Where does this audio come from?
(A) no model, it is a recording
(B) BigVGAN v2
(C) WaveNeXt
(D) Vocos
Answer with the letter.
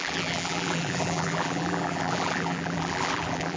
B